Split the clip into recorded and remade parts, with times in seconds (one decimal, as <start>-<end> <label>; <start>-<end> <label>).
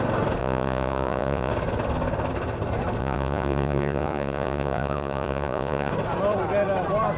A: 0.0-0.4 recorded; 0.4-1.5 remade; 1.5-3.0 recorded; 3.0-5.9 remade; 5.9-7.2 recorded